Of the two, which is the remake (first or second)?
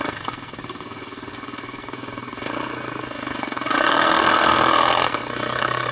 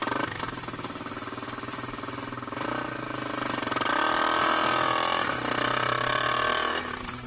first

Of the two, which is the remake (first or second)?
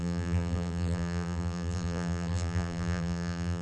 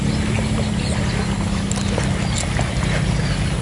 first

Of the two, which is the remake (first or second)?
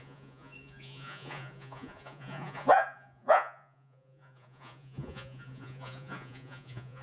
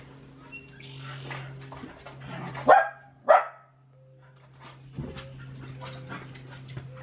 first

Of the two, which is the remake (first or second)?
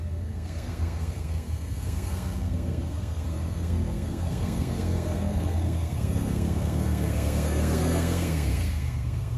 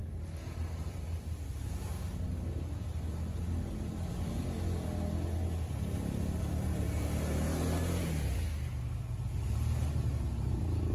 first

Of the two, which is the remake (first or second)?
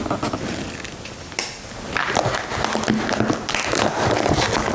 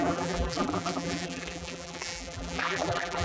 second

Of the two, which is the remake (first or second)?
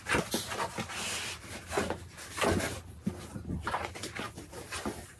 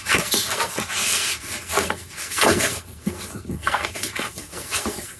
second